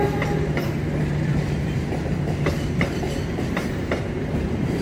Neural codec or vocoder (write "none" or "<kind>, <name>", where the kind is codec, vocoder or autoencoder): vocoder, BigVGAN v2